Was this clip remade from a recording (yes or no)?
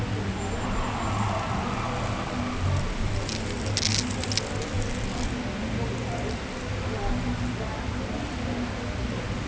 no